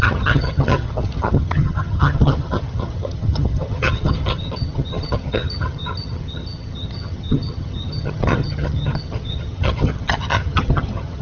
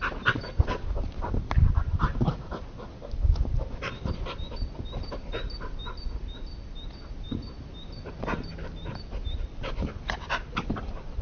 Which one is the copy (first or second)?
first